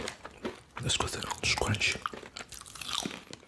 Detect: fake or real real